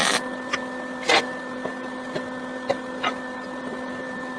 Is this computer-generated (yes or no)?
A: no